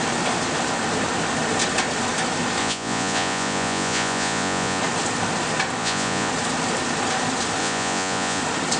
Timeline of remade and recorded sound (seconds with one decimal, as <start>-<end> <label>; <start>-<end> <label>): 0.0-2.6 recorded; 2.6-4.8 remade; 4.8-5.8 recorded; 5.8-6.3 remade; 6.3-7.6 recorded; 7.6-8.4 remade; 8.4-8.8 recorded

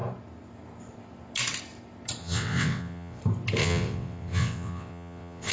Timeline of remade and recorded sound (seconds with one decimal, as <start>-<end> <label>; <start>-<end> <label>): 0.0-2.2 recorded; 2.2-3.2 remade; 3.2-3.6 recorded; 3.6-5.5 remade

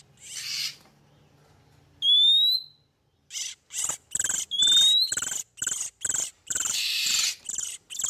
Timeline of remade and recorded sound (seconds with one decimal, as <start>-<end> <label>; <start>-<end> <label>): 0.0-6.3 recorded; 6.3-7.1 remade; 7.1-8.1 recorded

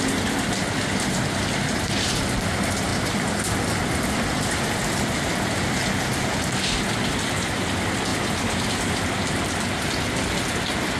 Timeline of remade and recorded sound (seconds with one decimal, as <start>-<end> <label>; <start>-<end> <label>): 0.0-11.0 recorded

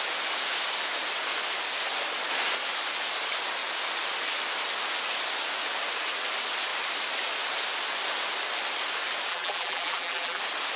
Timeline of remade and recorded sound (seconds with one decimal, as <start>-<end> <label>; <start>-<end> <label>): 0.0-9.3 recorded; 9.3-10.4 remade; 10.4-10.8 recorded

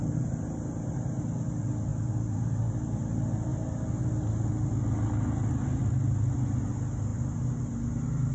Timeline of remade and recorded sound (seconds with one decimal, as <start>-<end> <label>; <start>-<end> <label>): 0.0-1.9 recorded; 1.9-2.7 remade; 2.7-8.3 recorded